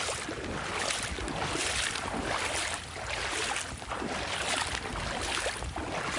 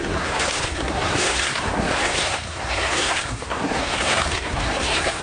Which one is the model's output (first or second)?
second